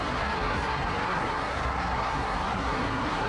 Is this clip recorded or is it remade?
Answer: remade